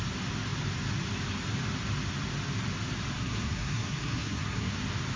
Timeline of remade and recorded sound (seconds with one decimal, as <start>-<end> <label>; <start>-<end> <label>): 0.0-3.1 recorded; 3.1-4.7 remade; 4.7-5.2 recorded